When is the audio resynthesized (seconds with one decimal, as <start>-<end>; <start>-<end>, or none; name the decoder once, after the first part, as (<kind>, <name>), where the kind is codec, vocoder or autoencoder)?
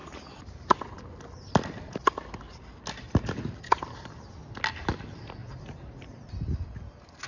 5.4-5.9 (vocoder, BigVGAN v2)